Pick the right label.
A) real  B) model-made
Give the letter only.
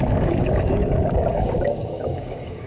B